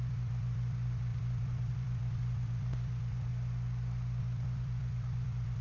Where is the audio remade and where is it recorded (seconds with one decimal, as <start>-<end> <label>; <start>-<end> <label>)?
0.0-3.3 remade; 3.3-4.2 recorded; 4.2-5.6 remade